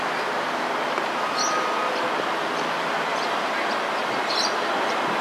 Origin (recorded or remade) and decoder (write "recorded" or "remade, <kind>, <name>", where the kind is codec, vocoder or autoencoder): recorded